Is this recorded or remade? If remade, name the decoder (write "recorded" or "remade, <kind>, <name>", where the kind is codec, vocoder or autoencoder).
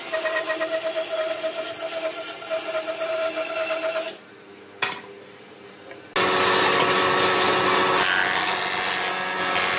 recorded